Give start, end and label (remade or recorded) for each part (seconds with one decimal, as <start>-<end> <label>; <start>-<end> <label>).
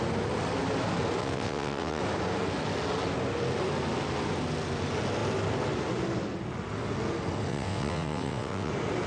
0.0-1.2 recorded; 1.2-2.0 remade; 2.0-7.5 recorded; 7.5-8.7 remade; 8.7-9.1 recorded